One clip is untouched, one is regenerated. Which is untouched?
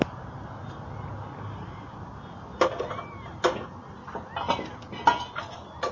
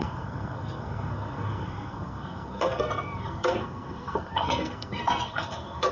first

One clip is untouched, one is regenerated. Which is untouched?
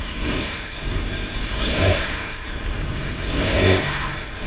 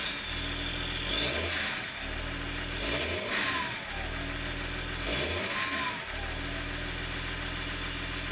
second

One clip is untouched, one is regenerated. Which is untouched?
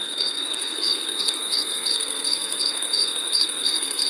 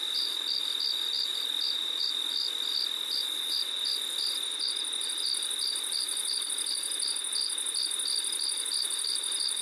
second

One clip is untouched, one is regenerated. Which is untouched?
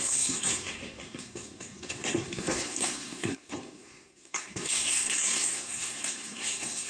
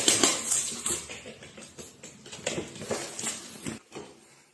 second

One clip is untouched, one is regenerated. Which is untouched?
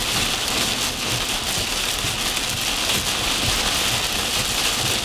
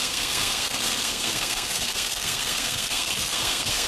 first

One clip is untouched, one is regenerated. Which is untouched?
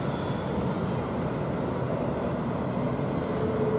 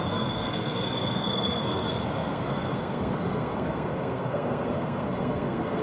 first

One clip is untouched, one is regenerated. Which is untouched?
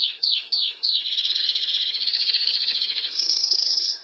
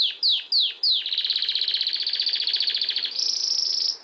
second